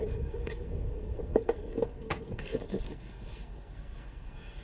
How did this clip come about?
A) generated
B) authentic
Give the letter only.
A